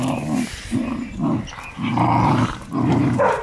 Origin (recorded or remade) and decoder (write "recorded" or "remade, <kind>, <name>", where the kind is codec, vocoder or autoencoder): recorded